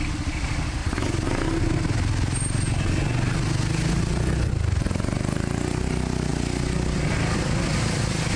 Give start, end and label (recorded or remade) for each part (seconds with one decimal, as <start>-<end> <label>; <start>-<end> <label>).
0.0-8.4 recorded